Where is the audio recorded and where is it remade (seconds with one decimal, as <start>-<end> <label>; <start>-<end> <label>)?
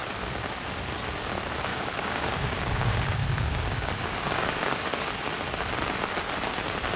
0.0-1.7 recorded; 1.7-5.0 remade; 5.0-7.0 recorded